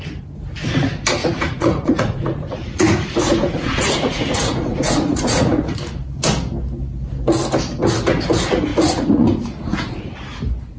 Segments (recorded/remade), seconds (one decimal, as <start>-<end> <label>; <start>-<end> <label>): 0.0-1.2 recorded; 1.2-5.8 remade; 5.8-8.7 recorded; 8.7-10.1 remade; 10.1-10.8 recorded